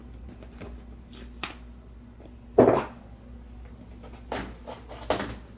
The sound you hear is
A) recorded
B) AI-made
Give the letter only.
A